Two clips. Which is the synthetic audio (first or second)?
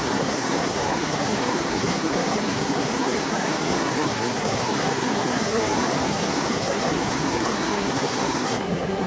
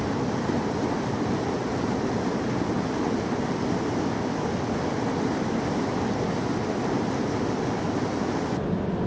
first